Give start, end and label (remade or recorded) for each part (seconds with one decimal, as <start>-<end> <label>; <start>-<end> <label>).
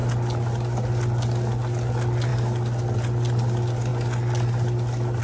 0.0-5.2 recorded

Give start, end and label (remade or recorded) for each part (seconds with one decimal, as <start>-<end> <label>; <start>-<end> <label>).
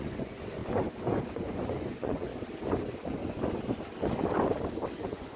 0.0-2.3 remade; 2.3-2.8 recorded; 2.8-3.2 remade; 3.2-5.0 recorded; 5.0-5.4 remade